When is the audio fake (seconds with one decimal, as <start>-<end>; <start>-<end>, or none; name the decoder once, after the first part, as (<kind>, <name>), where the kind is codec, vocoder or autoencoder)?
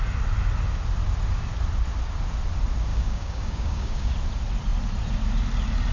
2.9-4.1 (codec, DAC)